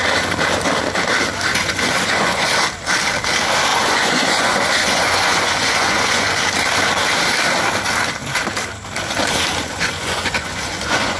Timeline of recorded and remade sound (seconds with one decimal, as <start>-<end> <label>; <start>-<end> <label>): 0.0-1.5 recorded; 1.5-2.5 remade; 2.5-3.7 recorded; 3.7-6.4 remade; 6.4-9.6 recorded; 9.6-11.2 remade